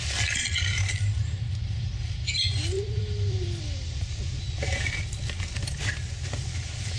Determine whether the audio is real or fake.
real